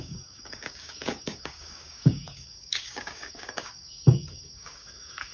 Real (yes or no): no